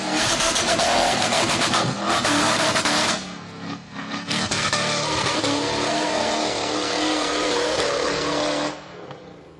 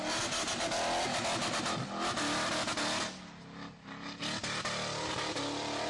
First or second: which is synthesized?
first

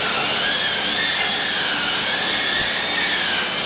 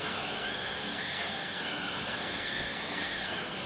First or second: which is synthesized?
second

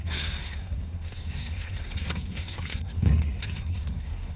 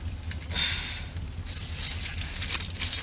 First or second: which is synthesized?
first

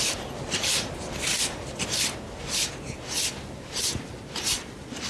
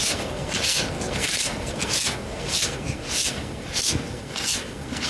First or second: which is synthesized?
second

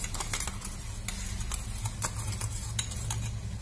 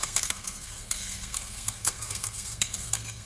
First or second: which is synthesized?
second